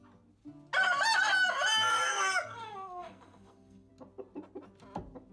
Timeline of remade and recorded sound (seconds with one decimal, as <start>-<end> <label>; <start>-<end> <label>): 0.0-1.9 recorded; 1.9-3.9 remade; 3.9-5.3 recorded